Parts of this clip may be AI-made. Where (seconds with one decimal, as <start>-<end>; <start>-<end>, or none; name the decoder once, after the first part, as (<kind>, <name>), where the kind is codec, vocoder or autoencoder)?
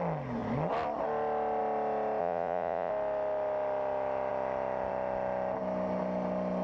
2.2-2.9 (vocoder, Vocos)